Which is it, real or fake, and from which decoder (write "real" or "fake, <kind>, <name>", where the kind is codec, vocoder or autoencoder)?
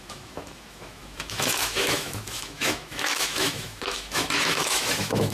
fake, autoencoder, DAC-VAE